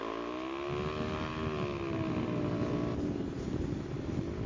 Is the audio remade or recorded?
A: recorded